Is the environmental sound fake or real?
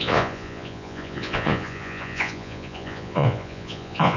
fake